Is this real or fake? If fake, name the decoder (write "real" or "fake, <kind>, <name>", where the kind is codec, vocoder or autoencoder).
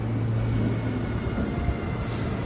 real